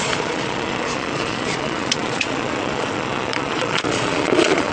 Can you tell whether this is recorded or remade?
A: remade